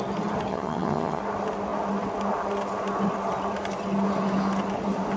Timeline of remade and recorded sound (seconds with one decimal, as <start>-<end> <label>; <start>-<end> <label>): 0.0-0.5 recorded; 0.5-1.2 remade; 1.2-5.2 recorded